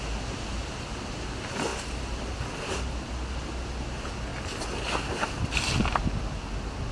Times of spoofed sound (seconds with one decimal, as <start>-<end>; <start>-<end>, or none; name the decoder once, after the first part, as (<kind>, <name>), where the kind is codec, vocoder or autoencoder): none